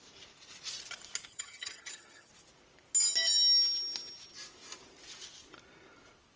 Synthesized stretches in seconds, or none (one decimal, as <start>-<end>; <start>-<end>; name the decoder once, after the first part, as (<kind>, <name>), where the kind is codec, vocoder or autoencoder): 1.3-2.3 (vocoder, HiFi-GAN)